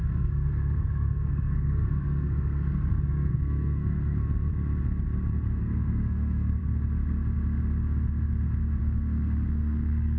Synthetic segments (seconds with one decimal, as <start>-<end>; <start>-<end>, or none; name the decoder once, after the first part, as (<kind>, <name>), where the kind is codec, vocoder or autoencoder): 0.0-4.5 (codec, SNAC); 5.6-6.6; 8.8-10.2